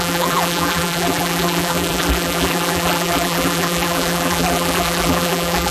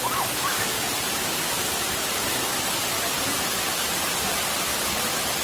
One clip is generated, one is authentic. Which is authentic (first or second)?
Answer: second